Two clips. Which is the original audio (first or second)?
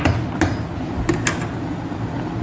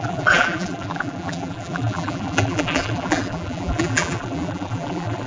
first